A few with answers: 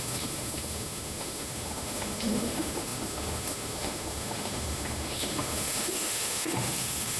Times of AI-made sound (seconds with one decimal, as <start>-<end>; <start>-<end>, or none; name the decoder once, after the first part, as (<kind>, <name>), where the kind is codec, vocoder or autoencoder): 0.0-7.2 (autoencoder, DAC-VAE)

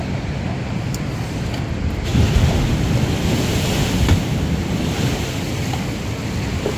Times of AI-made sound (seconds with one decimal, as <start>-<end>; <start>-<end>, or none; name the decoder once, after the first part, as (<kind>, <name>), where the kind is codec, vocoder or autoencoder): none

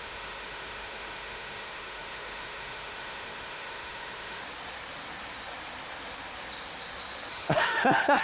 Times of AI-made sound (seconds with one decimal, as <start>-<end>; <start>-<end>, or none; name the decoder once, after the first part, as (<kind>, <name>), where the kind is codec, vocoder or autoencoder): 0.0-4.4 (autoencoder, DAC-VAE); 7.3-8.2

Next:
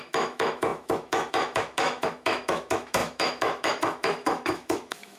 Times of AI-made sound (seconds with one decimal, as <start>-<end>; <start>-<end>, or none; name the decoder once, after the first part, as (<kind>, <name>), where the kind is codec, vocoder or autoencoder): 0.0-5.2 (autoencoder, DAC-VAE)

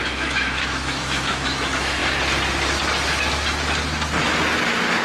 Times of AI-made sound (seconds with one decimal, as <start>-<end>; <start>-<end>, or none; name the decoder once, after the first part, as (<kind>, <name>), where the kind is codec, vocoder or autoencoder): 0.0-2.0 (autoencoder, DAC-VAE)

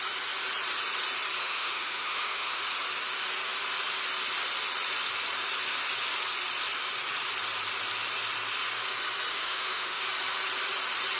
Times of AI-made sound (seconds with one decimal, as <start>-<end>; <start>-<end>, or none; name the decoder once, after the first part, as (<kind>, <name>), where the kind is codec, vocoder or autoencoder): 1.4-2.6 (autoencoder, DAC-VAE); 9.3-10.0

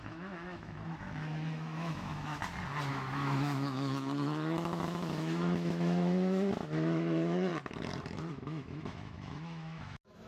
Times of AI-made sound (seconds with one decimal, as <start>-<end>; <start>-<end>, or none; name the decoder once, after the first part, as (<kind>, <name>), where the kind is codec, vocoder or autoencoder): 0.0-2.4 (autoencoder, DAC-VAE); 2.9-7.5; 8.3-10.3

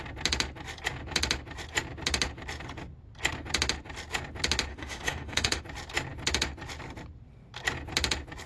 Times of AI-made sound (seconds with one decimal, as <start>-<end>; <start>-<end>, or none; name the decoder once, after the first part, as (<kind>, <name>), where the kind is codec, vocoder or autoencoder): 4.7-5.6 (autoencoder, DAC-VAE)